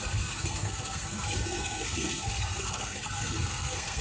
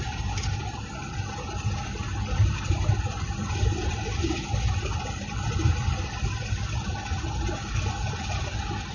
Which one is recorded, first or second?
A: second